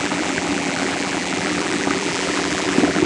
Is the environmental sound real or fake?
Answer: fake